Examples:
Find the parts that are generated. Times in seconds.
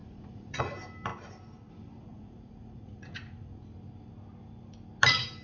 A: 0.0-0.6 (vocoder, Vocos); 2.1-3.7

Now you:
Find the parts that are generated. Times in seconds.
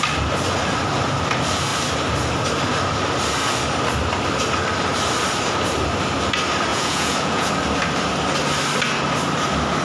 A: 6.7-7.5 (vocoder, Vocos)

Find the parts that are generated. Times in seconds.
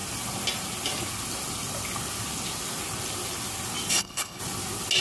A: 3.9-4.4 (codec, HILCodec)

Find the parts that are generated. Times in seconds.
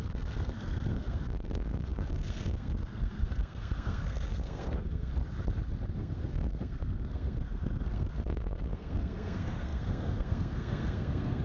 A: 0.0-5.1 (codec, SNAC); 5.9-11.4